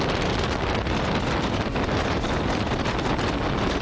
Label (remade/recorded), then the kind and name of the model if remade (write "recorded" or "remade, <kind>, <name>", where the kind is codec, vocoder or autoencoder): recorded